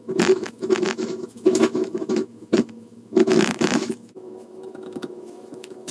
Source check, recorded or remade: remade